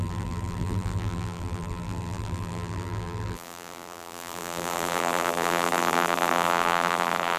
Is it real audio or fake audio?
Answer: fake